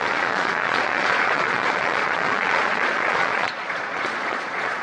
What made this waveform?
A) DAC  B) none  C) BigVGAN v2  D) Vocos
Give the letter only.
D